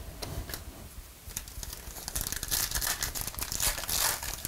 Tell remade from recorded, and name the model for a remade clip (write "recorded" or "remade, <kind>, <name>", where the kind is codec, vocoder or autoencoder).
recorded